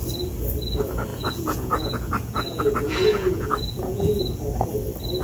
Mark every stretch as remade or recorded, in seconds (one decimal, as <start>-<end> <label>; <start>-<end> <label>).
0.0-1.1 recorded; 1.1-4.2 remade; 4.2-5.2 recorded